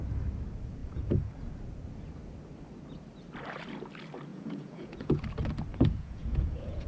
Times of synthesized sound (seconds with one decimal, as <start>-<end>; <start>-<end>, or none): 0.8-1.3; 4.3-5.2; 5.7-6.9